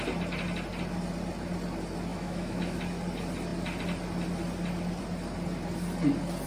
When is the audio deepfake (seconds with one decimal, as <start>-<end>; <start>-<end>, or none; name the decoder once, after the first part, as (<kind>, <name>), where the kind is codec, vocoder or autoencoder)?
2.1-2.8 (autoencoder, DAC-VAE)